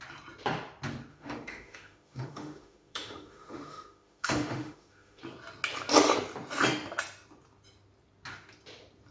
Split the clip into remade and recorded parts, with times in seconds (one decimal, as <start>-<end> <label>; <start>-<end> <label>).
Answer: 0.0-1.1 recorded; 1.1-5.2 remade; 5.2-9.1 recorded